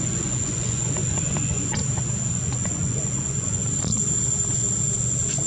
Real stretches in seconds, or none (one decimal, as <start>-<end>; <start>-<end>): 1.8-2.3; 3.6-5.0